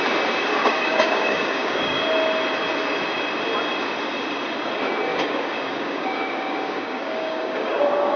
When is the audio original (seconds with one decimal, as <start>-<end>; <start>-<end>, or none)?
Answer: 0.0-0.5; 2.0-5.1